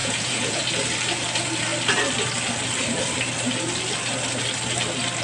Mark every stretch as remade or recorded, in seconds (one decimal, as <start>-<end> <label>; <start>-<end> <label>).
0.0-0.6 remade; 0.6-5.2 recorded